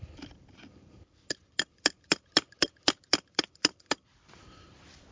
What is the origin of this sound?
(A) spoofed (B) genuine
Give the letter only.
A